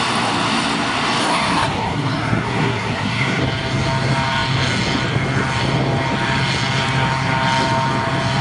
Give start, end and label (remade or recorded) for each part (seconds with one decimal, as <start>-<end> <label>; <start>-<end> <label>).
0.0-1.2 recorded; 1.2-3.4 remade; 3.4-8.4 recorded